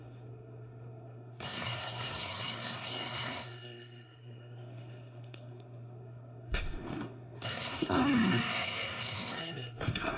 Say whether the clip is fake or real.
fake